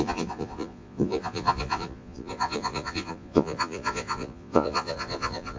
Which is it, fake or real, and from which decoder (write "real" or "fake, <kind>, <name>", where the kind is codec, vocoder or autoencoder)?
fake, vocoder, Vocos